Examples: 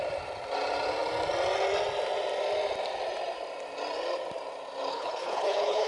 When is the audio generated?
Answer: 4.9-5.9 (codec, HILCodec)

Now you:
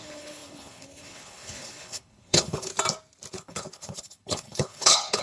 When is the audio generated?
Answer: 0.0-2.7 (codec, HILCodec); 3.3-5.2

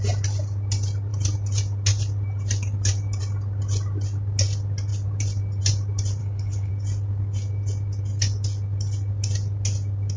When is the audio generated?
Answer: 6.2-6.7 (codec, HILCodec)

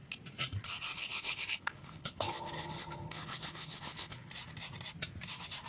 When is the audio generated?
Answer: 0.9-4.3 (codec, HILCodec)

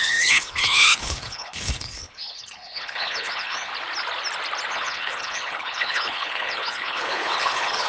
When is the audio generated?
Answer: 0.0-3.7 (codec, HILCodec); 4.7-7.9

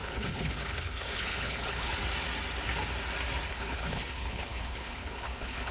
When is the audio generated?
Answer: 0.0-1.9 (codec, HILCodec); 3.5-5.7

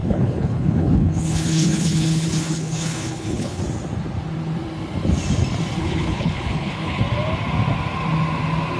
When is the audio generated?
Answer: 0.0-3.6 (codec, HILCodec); 5.8-7.0

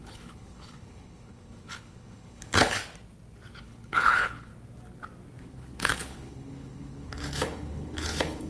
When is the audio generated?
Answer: 0.0-2.8 (codec, HILCodec); 3.6-4.5; 5.4-8.5